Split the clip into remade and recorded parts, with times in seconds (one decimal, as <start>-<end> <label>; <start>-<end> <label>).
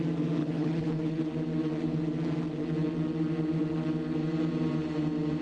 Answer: 0.0-0.4 recorded; 0.4-1.2 remade; 1.2-5.4 recorded